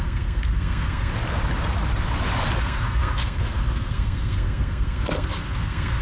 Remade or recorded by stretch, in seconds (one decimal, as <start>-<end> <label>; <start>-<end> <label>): 0.0-1.1 remade; 1.1-2.6 recorded; 2.6-6.0 remade